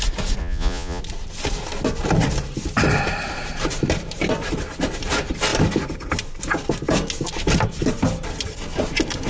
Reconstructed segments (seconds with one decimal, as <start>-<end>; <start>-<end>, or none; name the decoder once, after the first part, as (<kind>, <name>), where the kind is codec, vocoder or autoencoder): 0.4-1.0 (vocoder, Vocos)